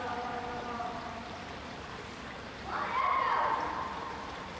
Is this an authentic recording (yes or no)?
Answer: no